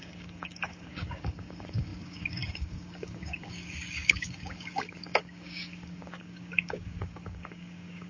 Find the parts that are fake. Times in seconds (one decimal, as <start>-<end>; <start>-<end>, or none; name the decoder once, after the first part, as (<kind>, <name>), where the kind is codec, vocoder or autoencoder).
0.0-8.1 (codec, DAC)

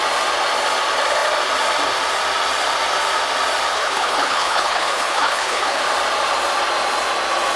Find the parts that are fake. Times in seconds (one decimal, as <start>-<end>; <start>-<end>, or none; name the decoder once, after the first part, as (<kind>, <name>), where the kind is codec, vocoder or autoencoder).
3.7-5.8 (codec, HILCodec)

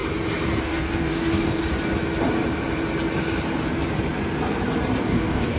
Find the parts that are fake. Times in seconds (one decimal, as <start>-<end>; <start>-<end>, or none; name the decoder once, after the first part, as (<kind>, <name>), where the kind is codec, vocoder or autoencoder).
0.6-1.6 (codec, DAC); 5.0-5.6

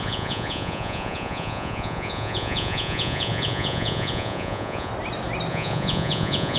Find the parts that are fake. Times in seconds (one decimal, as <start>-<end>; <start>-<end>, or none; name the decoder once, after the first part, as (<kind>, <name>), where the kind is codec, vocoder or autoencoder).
0.0-4.9 (vocoder, Vocos); 5.5-6.6

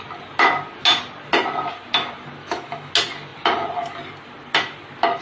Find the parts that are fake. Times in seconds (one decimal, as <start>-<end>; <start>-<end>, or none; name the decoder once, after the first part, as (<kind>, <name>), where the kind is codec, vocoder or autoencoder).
2.4-2.9 (autoencoder, DAC-VAE)

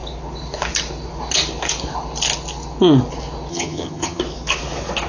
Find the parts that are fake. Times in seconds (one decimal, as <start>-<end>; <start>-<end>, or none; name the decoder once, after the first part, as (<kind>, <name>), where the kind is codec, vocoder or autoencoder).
3.5-4.2 (vocoder, HiFi-GAN)

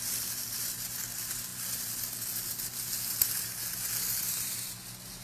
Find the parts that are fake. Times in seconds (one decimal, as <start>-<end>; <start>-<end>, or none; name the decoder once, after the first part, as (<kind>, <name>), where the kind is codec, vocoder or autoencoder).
none